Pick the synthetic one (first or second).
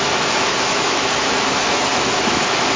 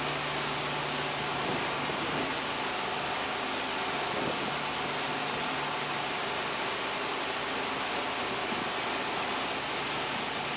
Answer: first